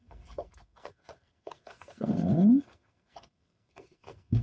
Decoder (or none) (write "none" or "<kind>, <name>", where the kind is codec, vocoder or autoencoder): codec, SNAC